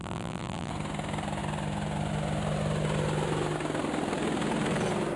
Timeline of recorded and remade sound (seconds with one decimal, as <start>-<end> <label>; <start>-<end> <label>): 0.0-0.7 remade; 0.7-5.2 recorded